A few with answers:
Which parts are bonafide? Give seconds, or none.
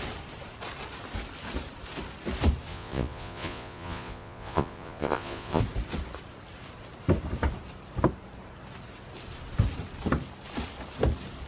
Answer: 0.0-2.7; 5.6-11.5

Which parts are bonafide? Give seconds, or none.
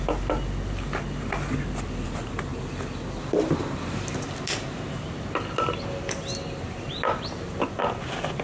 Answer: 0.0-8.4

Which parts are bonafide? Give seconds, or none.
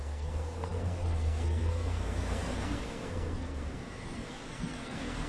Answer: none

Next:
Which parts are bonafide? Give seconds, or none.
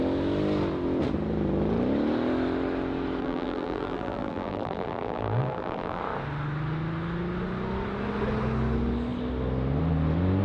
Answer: 0.0-3.2; 6.0-10.4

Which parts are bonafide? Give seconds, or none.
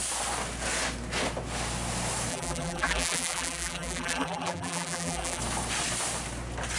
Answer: 0.0-2.3; 5.4-6.8